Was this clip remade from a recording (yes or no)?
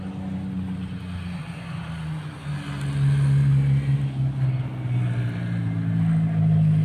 no